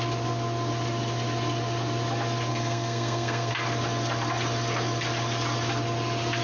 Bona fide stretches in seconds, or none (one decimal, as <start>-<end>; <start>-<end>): 0.0-2.5; 3.5-6.4